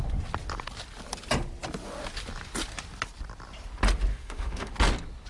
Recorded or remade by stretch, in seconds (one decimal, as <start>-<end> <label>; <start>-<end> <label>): 0.0-4.1 recorded; 4.1-4.7 remade; 4.7-5.3 recorded